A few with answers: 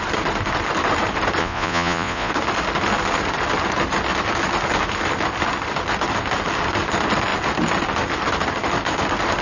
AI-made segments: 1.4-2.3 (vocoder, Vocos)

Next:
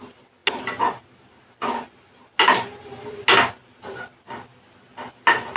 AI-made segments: none

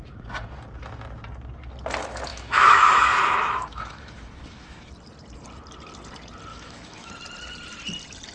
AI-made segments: 2.3-4.9 (autoencoder, DAC-VAE); 6.5-7.1